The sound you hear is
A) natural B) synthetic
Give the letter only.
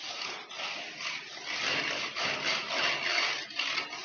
A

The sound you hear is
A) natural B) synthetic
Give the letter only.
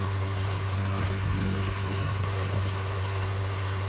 B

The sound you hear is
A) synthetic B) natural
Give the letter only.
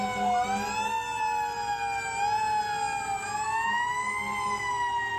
B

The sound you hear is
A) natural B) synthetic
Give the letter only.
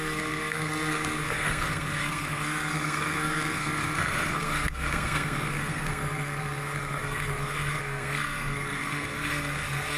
B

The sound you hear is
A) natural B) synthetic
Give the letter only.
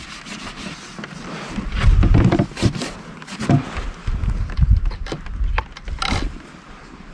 A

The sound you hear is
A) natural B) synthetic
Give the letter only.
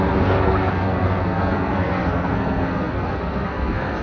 B